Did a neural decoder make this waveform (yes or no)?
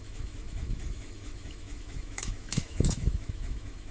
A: yes